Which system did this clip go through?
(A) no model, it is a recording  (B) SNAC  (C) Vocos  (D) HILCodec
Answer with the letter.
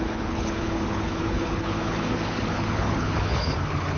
D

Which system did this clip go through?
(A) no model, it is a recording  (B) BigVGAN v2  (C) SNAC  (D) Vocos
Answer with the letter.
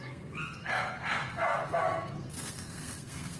C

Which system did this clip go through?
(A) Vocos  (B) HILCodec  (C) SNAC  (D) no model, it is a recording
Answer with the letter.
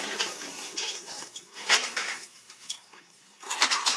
C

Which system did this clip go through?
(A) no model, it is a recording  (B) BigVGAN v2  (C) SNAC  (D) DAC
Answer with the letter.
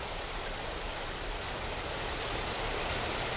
A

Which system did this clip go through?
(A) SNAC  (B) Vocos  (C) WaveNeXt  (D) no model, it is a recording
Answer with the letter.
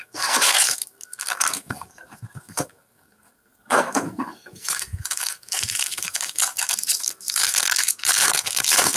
A